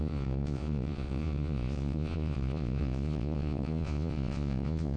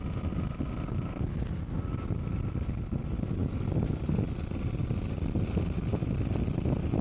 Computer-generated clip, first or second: first